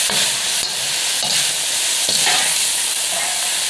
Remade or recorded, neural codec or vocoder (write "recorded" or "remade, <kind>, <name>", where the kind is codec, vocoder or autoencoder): recorded